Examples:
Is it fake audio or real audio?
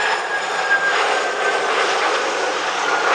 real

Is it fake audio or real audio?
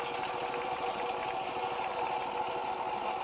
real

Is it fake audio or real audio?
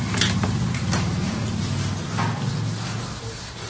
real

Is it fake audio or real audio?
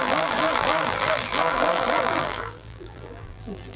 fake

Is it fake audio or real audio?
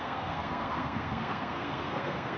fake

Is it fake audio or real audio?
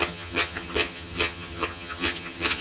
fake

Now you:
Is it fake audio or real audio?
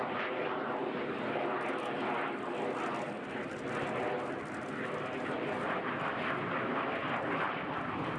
real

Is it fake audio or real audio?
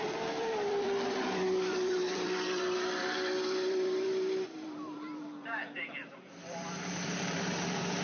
fake